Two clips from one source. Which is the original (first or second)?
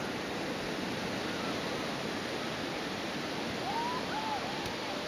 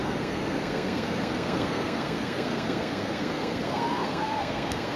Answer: first